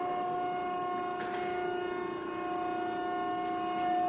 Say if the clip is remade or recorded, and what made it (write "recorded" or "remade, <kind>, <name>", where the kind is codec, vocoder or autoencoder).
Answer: recorded